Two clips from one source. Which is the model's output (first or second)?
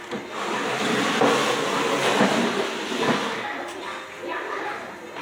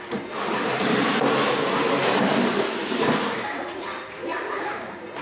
second